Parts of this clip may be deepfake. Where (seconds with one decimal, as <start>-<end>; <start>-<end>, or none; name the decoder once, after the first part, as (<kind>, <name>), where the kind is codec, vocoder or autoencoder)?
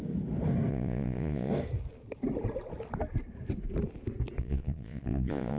0.7-1.5 (vocoder, Vocos); 4.4-5.6